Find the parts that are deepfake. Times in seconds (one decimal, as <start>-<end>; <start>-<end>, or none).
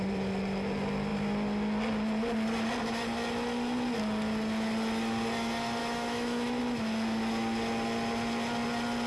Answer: 5.8-6.6